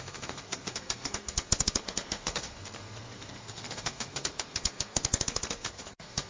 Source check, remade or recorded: remade